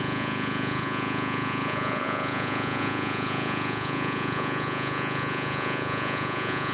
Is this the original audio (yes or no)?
no